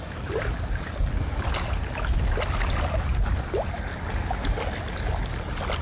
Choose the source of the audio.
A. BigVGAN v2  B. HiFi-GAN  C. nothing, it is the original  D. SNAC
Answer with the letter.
C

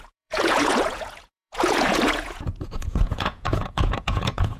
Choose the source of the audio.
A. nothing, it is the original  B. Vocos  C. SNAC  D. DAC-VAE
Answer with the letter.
B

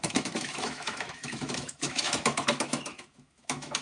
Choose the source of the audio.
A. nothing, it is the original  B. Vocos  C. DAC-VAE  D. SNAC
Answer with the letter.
C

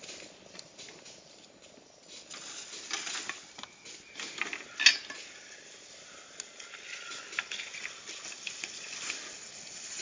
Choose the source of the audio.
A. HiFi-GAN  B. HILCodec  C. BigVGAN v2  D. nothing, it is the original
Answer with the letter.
D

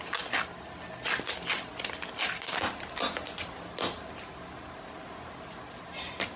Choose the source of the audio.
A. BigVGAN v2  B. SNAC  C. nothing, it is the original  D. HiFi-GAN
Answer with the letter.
C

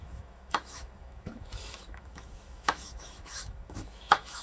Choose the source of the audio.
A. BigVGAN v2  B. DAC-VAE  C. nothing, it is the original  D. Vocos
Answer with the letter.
B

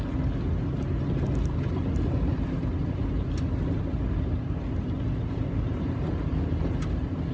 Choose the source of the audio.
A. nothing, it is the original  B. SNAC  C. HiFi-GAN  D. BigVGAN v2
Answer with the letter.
A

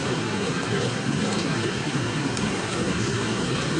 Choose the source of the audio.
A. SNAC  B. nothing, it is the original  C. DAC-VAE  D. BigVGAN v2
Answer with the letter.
A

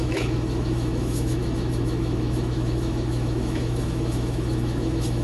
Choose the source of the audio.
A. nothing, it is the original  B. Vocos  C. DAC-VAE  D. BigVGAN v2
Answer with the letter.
C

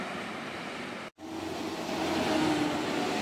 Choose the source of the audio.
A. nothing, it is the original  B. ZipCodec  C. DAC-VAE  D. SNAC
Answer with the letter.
A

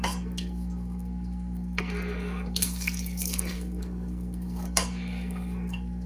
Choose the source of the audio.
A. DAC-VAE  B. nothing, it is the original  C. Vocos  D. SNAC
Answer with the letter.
D